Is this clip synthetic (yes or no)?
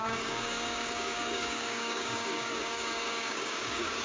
yes